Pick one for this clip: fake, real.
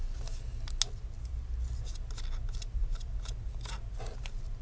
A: real